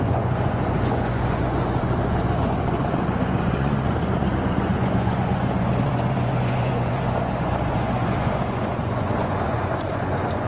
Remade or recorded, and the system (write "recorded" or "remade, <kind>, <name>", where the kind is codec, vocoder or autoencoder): remade, vocoder, Vocos